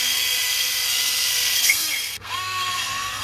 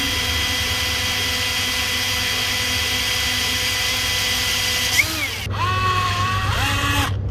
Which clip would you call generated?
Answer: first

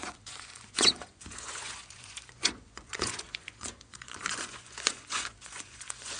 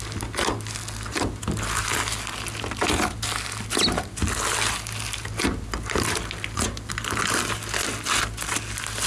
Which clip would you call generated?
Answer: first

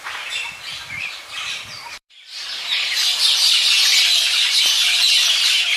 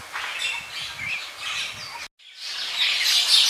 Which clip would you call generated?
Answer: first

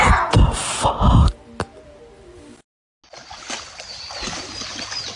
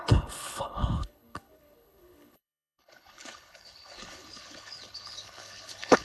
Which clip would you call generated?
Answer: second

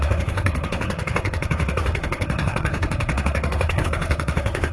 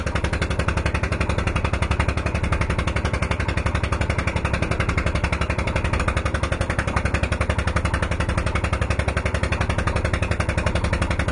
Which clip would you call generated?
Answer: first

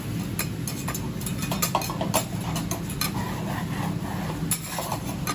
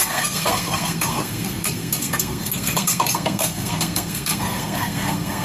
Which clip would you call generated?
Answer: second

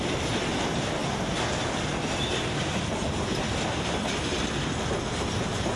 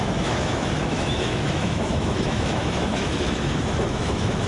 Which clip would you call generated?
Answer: second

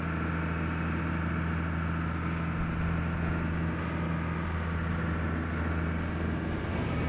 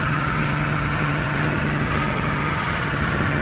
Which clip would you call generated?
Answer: second